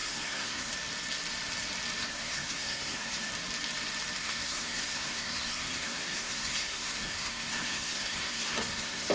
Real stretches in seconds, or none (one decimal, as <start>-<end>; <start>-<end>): 0.7-2.1; 3.3-4.2